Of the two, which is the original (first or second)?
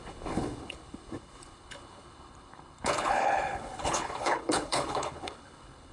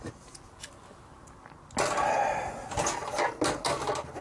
second